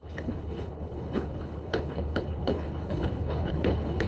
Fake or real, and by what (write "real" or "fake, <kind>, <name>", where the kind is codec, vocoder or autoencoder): fake, codec, HILCodec